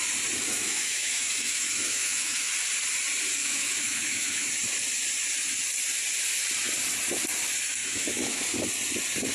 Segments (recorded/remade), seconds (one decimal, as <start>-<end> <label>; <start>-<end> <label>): 0.0-0.5 recorded; 0.5-2.5 remade; 2.5-3.4 recorded; 3.4-4.5 remade; 4.5-7.8 recorded; 7.8-8.4 remade; 8.4-9.3 recorded